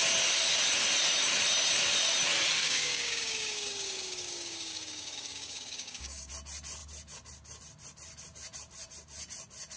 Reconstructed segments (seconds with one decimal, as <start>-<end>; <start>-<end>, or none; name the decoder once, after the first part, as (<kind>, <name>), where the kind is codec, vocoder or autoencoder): 2.6-6.3 (codec, DAC)